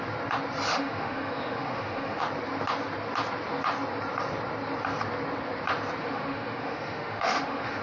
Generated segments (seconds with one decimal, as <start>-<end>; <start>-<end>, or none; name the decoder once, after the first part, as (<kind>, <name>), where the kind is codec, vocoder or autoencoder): 0.7-2.2 (autoencoder, DAC-VAE); 6.0-7.8